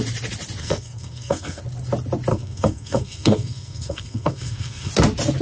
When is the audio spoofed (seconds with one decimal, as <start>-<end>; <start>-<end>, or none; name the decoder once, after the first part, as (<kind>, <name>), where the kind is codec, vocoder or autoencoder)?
0.6-1.6 (codec, SNAC); 2.3-4.9